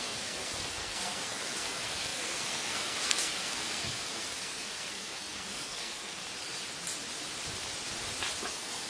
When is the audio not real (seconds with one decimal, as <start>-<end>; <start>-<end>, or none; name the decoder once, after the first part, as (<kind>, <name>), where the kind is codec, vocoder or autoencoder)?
0.0-6.2 (codec, SNAC); 8.5-8.9